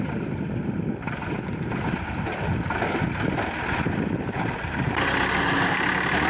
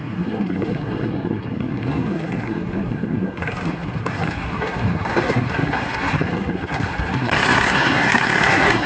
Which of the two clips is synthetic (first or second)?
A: second